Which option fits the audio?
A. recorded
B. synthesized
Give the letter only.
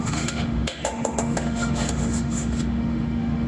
B